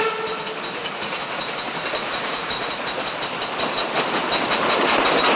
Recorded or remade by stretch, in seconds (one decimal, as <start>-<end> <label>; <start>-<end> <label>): 0.0-0.8 recorded; 0.8-1.4 remade; 1.4-2.0 recorded; 2.0-3.1 remade; 3.1-5.4 recorded